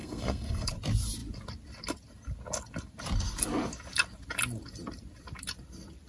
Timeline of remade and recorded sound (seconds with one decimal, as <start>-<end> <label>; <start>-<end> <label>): 0.0-0.7 remade; 0.7-6.1 recorded